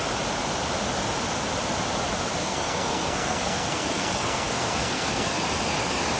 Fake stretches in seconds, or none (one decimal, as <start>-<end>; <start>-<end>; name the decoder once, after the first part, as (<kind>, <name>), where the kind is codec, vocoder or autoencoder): 2.4-5.4 (codec, SNAC)